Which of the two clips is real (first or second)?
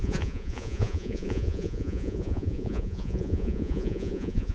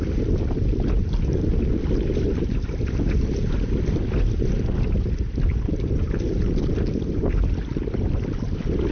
second